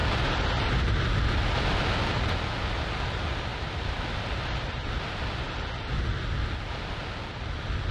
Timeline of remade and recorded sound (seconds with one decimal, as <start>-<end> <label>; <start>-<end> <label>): 0.0-1.8 remade; 1.8-3.5 recorded; 3.5-5.9 remade; 5.9-7.9 recorded